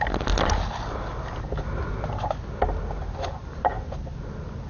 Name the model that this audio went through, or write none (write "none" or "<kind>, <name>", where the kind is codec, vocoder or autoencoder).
none